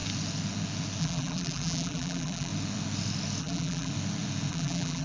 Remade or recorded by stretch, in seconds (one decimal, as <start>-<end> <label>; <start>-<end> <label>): 0.0-1.0 recorded; 1.0-2.5 remade; 2.5-3.4 recorded; 3.4-3.9 remade; 3.9-4.5 recorded; 4.5-5.0 remade